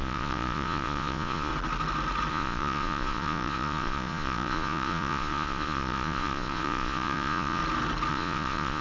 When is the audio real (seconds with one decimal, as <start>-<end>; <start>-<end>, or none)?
1.5-2.3; 7.6-8.1